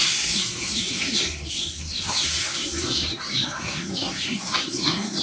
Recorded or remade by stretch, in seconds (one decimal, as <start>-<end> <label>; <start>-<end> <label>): 0.0-5.2 remade